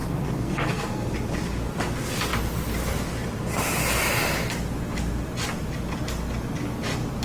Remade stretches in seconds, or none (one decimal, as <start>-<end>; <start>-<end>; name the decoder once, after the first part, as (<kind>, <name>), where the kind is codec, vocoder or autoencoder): 0.0-1.1 (codec, SNAC)